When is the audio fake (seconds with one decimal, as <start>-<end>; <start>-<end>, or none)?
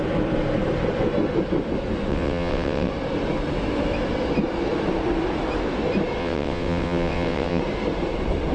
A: 2.1-2.9; 6.2-7.6